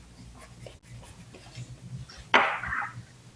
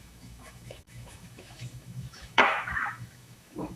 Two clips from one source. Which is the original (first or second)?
first